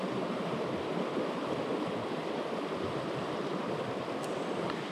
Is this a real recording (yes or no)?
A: no